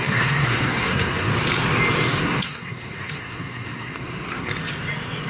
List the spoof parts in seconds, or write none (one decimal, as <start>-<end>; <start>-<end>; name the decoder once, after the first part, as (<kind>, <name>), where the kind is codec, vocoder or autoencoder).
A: 0.0-1.3 (codec, SNAC); 2.2-4.5